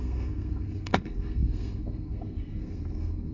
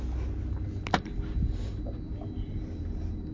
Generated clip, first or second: first